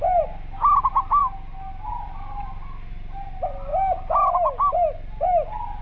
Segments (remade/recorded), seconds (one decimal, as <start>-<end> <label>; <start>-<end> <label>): 0.0-5.8 recorded

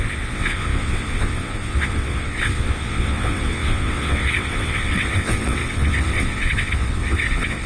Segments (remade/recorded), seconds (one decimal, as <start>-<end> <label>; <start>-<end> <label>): 0.0-7.7 remade

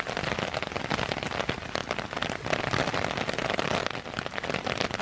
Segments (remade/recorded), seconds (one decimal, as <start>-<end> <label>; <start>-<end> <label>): 0.0-5.0 recorded

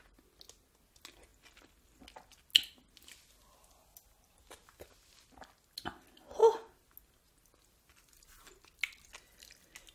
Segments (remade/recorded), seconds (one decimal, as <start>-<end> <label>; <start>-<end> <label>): 0.0-9.9 recorded

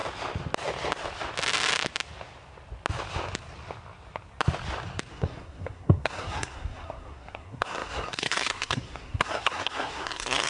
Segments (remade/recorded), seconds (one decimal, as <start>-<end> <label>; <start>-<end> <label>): 0.0-5.1 recorded; 5.1-10.5 remade

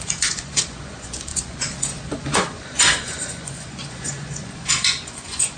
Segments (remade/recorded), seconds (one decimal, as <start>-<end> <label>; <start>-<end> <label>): 0.0-5.6 remade